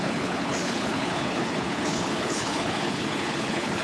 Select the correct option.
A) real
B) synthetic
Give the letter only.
B